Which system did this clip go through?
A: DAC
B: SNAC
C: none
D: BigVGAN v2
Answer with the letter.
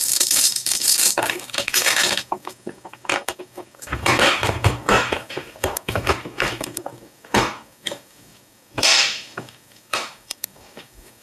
A